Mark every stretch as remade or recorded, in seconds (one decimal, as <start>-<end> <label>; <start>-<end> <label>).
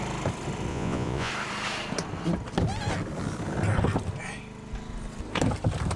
0.0-0.7 recorded; 0.7-1.3 remade; 1.3-6.0 recorded